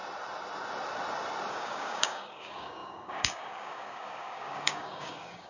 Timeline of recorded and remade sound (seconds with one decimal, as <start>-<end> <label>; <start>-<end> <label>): 0.0-1.5 recorded; 1.5-5.5 remade